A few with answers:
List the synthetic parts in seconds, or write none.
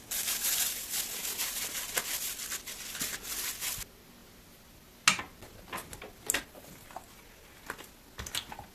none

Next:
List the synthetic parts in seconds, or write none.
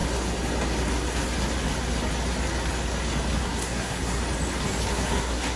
3.4-4.2 (codec, SNAC); 4.9-5.6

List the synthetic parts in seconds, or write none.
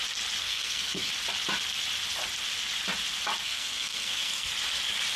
0.4-1.1 (codec, SNAC); 3.4-4.5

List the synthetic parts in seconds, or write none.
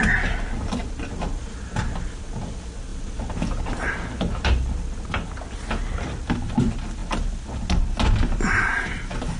none